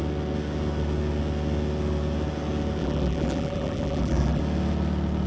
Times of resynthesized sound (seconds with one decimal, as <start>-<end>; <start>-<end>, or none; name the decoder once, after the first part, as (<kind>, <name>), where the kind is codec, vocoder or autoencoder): 2.8-4.4 (vocoder, BigVGAN v2)